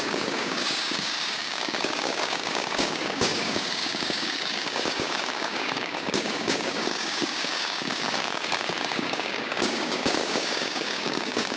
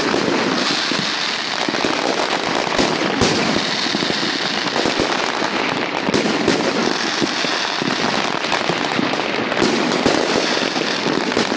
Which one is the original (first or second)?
second